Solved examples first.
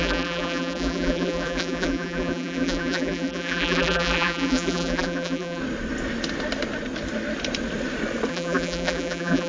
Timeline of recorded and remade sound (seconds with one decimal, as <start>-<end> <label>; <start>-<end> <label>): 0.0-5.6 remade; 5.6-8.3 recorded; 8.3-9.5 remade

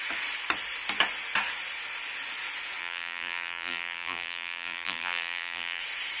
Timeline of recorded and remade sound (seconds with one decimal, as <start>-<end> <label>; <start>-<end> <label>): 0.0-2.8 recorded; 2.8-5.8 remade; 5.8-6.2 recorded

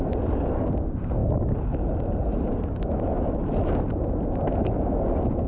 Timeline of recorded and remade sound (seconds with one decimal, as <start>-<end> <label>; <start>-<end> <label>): 0.0-5.5 recorded

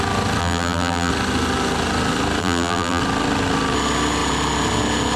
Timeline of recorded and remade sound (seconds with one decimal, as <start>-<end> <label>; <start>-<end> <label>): 0.0-0.4 recorded; 0.4-1.1 remade; 1.1-2.4 recorded; 2.4-3.0 remade; 3.0-5.2 recorded